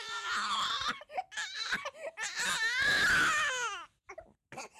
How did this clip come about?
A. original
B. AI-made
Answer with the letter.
A